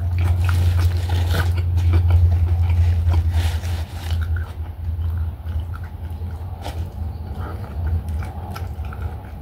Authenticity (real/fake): real